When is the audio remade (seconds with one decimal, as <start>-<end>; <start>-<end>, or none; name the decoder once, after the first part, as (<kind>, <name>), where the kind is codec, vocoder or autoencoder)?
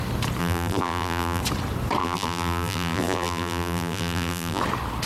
0.4-1.4 (vocoder, BigVGAN v2); 2.0-4.6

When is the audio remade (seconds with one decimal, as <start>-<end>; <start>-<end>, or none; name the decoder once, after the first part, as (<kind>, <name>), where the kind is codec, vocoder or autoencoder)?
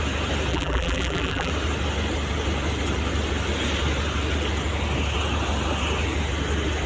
0.5-1.5 (vocoder, BigVGAN v2)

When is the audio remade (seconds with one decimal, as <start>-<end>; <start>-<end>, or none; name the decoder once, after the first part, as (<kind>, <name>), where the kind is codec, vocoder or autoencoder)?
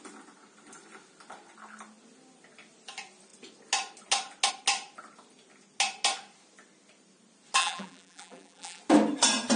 7.6-8.8 (vocoder, BigVGAN v2)